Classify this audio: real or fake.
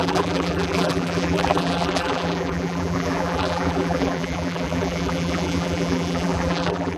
fake